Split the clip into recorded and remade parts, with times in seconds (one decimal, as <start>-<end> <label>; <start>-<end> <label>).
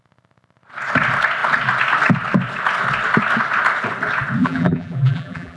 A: 0.0-4.4 recorded; 4.4-5.6 remade